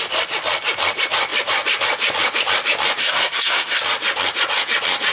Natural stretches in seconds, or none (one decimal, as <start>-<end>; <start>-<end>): 0.0-3.0; 3.8-5.1